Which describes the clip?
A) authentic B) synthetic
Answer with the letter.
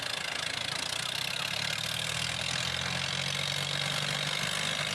A